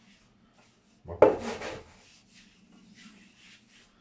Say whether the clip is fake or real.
real